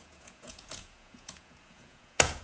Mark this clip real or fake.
fake